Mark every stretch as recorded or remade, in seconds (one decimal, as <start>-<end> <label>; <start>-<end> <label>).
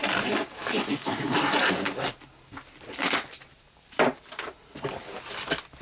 0.0-5.8 recorded